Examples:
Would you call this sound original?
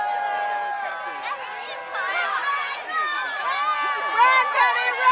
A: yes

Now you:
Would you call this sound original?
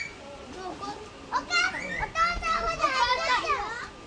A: yes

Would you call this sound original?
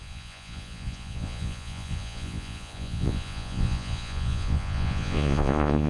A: no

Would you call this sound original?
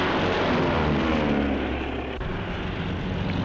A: yes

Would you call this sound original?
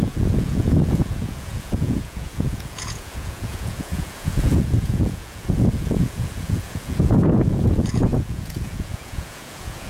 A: no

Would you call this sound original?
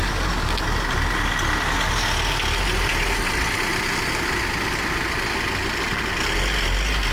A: yes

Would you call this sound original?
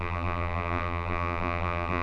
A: no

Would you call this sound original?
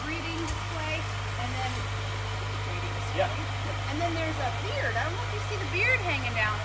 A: yes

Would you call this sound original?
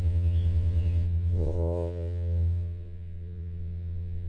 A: no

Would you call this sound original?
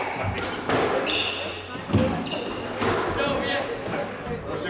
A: yes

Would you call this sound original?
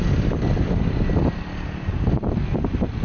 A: yes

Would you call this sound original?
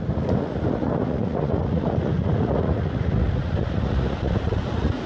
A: no